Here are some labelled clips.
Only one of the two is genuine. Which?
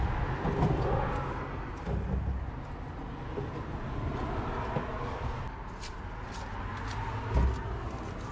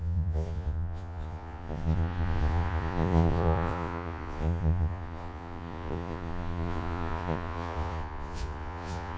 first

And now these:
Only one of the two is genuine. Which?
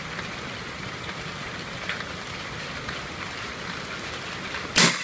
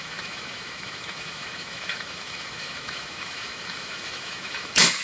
first